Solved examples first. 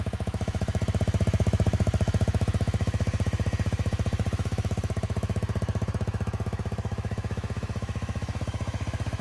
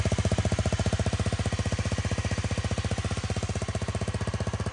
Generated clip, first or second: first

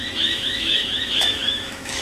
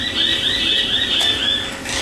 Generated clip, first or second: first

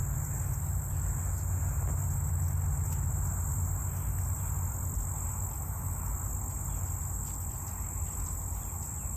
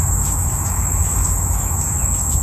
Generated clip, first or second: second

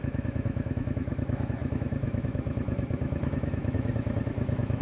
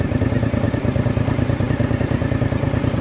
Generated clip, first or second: first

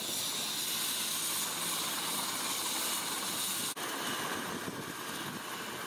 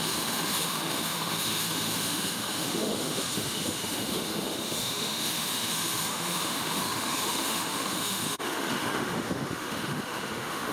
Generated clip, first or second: second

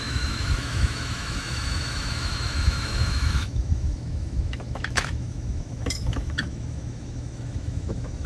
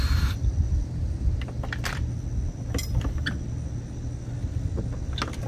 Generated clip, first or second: first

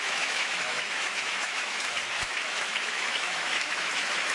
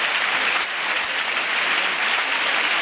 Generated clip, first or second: first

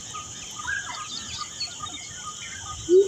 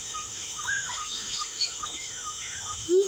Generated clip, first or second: second